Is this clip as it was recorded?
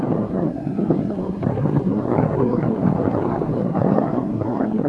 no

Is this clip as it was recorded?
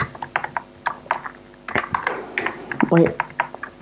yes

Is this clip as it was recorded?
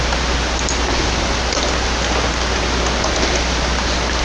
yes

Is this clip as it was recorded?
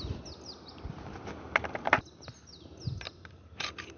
yes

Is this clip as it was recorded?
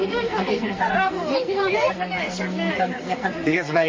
no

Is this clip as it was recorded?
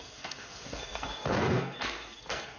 no